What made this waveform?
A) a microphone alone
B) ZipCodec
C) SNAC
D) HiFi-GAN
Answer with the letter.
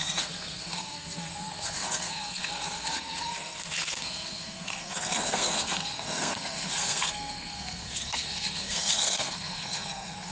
C